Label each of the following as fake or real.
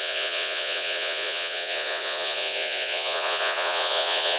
fake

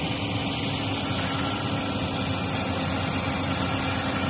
real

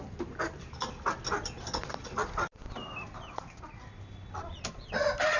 real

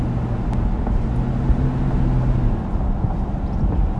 real